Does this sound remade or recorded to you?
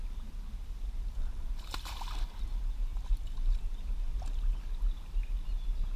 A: recorded